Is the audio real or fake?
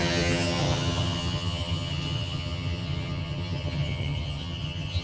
fake